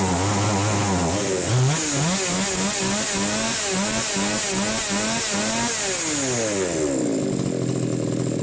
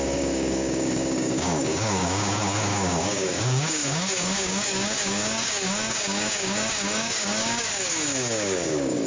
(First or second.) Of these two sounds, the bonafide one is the first